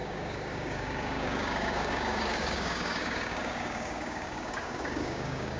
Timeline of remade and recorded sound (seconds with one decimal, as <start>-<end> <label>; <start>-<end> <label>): 0.0-5.6 remade